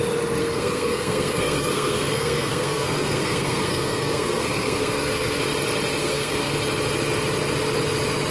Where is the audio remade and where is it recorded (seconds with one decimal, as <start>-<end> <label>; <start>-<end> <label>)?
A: 0.0-0.4 recorded; 0.4-5.4 remade; 5.4-6.0 recorded; 6.0-6.5 remade; 6.5-8.3 recorded